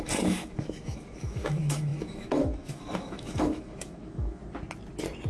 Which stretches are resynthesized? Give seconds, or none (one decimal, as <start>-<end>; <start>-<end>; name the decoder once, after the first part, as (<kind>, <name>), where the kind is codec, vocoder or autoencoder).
0.0-4.4 (autoencoder, DAC-VAE)